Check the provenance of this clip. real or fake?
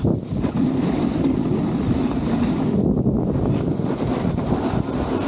real